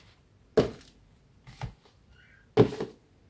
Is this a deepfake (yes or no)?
no